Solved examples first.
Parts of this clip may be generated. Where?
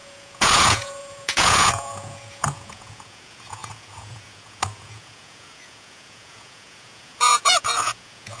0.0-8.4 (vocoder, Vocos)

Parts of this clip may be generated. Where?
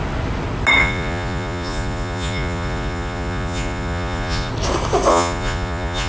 0.8-4.5 (vocoder, Vocos); 5.1-6.1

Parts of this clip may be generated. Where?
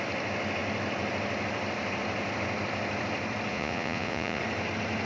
3.5-4.4 (vocoder, Vocos)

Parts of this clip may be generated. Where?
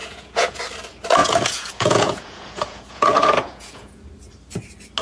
0.0-0.6 (vocoder, Vocos); 1.2-4.0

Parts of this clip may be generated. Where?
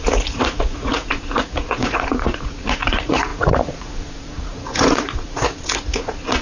0.0-6.4 (vocoder, Vocos)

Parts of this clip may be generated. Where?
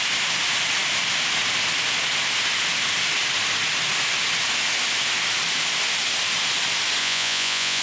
7.0-7.8 (vocoder, Vocos)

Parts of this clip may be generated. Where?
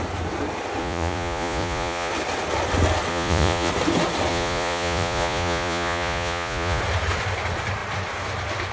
0.8-2.1 (vocoder, Vocos); 3.1-3.7; 4.3-6.8